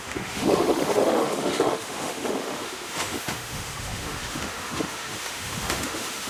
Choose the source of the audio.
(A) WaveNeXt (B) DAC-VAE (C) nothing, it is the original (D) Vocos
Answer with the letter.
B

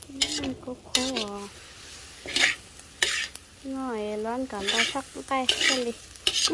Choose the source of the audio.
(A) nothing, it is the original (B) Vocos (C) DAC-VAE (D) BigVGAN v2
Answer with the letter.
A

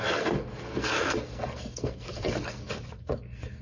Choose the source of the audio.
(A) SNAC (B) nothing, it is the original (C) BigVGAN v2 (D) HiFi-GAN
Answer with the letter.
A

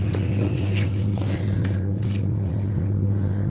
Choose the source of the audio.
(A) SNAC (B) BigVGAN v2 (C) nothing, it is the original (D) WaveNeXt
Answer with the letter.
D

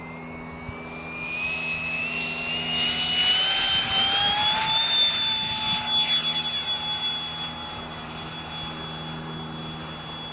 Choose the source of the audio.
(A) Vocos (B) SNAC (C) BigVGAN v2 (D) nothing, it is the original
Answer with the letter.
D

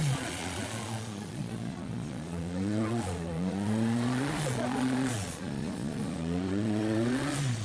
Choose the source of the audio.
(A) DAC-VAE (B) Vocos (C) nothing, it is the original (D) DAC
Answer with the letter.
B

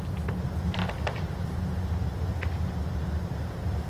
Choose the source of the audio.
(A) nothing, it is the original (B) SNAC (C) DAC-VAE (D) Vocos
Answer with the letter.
A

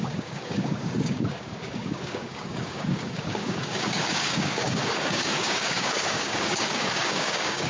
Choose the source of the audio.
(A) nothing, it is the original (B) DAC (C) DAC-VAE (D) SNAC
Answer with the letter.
B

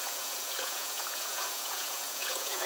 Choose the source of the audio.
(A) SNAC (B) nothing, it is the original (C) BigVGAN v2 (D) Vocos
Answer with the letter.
D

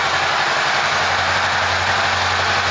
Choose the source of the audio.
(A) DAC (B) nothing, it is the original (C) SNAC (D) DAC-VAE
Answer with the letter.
B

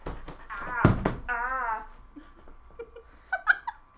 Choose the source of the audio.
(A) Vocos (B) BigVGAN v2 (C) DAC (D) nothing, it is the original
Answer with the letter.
D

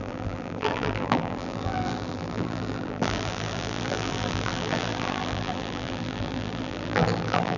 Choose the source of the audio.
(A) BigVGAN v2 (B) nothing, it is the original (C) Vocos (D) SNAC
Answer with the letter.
A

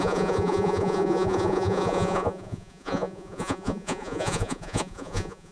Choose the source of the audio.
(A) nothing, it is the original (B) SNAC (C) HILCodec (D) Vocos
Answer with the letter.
D